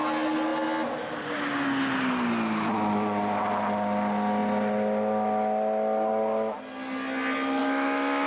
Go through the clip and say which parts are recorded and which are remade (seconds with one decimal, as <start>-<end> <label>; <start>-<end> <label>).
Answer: 0.0-7.6 recorded; 7.6-8.3 remade